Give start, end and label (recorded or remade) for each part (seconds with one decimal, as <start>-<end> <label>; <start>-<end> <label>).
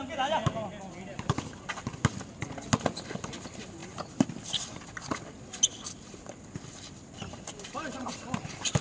0.0-8.8 recorded